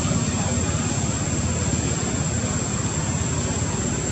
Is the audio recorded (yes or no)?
yes